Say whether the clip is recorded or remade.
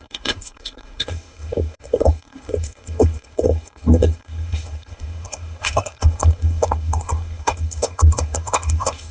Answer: remade